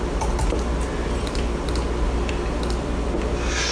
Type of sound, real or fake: real